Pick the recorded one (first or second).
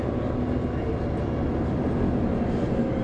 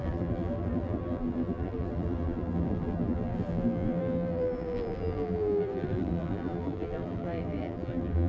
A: first